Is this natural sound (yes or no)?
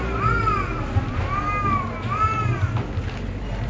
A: yes